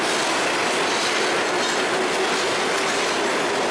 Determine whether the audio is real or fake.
real